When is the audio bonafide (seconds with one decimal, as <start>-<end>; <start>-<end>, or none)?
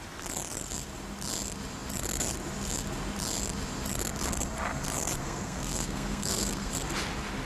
0.0-5.2; 6.7-7.5